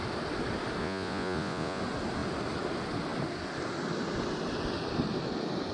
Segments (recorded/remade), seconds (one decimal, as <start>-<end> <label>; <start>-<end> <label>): 0.0-0.8 recorded; 0.8-1.8 remade; 1.8-5.7 recorded